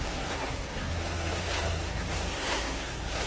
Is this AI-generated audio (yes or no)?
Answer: yes